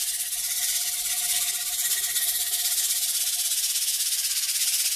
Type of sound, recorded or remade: recorded